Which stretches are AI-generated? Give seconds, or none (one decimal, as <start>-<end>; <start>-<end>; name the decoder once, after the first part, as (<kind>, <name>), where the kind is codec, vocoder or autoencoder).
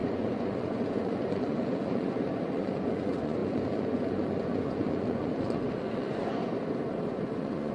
0.0-6.4 (vocoder, Vocos); 7.0-7.7